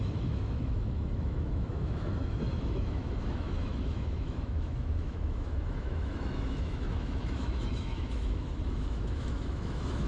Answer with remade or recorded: remade